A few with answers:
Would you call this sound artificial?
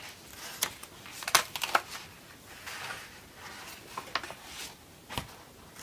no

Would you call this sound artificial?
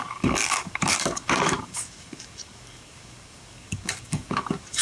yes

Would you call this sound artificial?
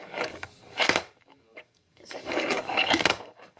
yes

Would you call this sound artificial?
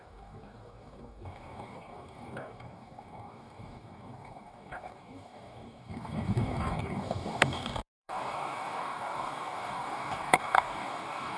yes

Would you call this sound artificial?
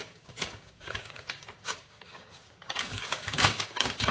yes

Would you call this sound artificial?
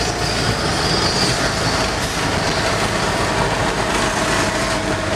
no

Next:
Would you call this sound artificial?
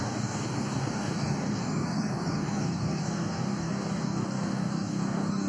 yes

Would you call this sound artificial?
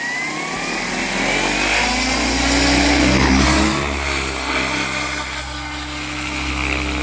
no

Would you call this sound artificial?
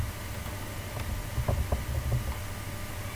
no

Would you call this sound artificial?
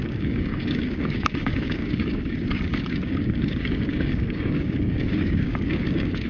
yes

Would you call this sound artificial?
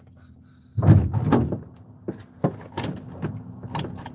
no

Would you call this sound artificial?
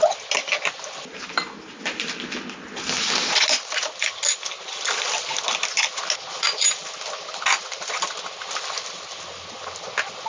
no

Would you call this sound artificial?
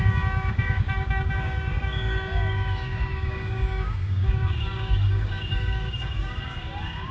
yes